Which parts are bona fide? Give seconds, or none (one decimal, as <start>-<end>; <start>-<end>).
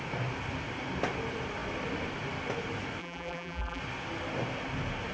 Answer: 0.0-3.0; 3.8-5.1